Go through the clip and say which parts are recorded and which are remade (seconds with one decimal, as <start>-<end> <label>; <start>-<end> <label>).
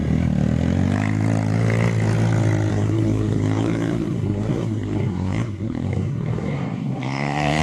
0.0-2.7 recorded; 2.7-7.6 remade